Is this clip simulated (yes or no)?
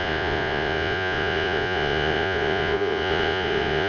yes